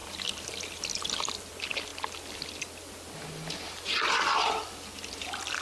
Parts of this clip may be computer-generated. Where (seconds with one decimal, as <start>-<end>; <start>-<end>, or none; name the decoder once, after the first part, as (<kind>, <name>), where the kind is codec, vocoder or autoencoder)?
none